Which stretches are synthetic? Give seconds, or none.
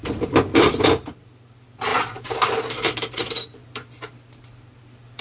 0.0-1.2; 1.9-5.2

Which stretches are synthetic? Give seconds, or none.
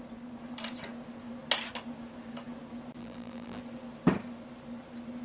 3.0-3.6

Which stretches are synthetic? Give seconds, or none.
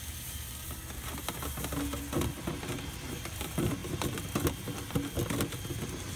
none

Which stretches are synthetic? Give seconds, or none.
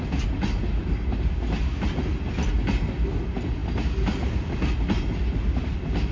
none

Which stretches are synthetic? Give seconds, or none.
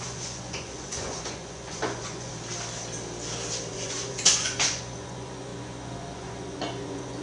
0.0-2.3; 3.7-7.2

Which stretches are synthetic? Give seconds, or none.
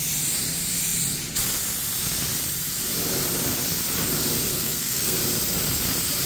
4.5-5.2